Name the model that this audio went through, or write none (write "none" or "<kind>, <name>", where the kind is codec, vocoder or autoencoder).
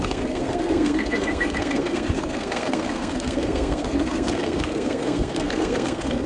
codec, SNAC